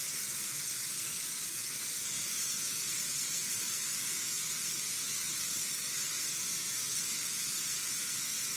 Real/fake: fake